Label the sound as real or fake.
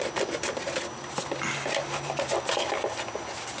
real